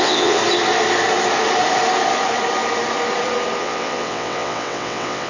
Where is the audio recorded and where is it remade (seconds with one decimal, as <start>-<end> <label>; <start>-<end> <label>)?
0.0-0.4 remade; 0.4-3.6 recorded; 3.6-5.3 remade